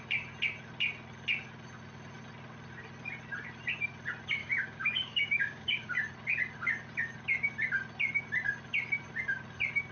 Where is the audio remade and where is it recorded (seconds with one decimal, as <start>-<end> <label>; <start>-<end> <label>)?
0.0-4.4 recorded; 4.4-5.9 remade; 5.9-9.9 recorded